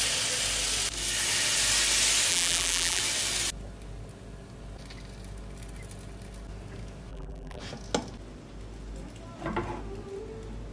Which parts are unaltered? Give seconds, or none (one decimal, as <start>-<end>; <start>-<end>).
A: 0.0-2.3; 3.0-7.1; 7.6-10.7